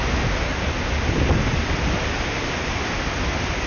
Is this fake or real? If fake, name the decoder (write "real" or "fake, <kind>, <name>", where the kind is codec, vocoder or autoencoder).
real